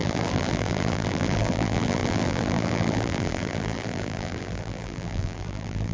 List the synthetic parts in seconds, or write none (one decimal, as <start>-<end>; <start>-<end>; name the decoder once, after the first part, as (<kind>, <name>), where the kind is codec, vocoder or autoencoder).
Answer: 0.0-5.9 (vocoder, BigVGAN v2)